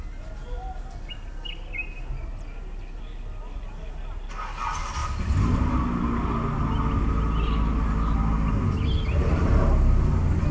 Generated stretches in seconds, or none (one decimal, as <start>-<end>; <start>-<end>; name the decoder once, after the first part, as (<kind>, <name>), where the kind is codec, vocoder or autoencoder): none